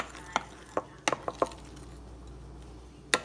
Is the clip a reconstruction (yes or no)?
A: no